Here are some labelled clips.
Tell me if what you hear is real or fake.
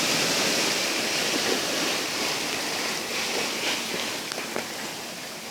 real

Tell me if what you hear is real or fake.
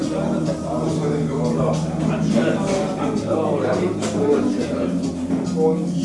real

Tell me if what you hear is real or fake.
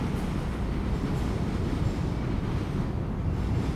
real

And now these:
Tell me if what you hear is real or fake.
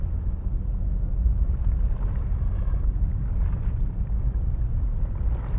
real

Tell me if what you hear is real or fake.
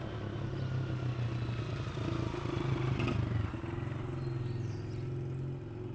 real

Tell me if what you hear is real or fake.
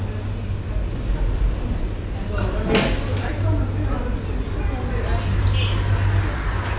real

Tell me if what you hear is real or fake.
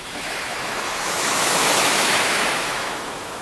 fake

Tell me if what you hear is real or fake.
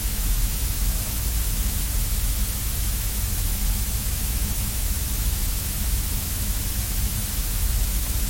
fake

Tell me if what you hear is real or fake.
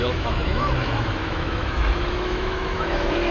fake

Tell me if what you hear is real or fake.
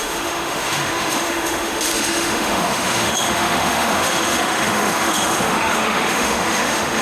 fake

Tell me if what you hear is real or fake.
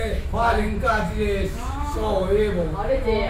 fake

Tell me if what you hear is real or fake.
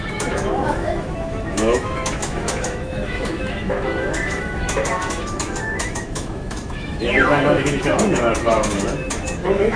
fake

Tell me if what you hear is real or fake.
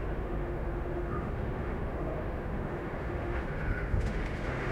fake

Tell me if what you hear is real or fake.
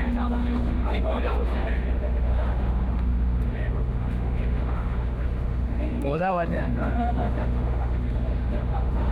fake